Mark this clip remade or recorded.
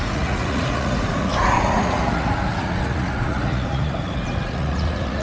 remade